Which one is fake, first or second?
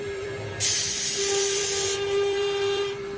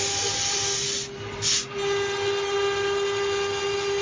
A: first